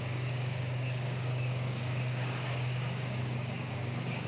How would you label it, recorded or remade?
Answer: remade